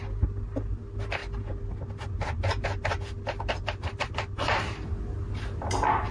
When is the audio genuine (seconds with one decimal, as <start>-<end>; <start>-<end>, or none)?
0.0-6.1